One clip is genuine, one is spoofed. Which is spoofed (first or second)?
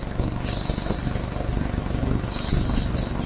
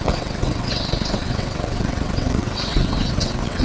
second